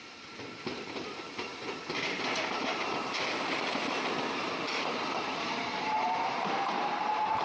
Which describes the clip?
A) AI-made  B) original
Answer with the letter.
A